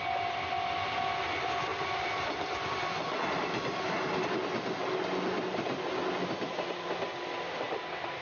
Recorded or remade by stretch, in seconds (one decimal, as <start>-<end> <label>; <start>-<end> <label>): 0.0-8.2 recorded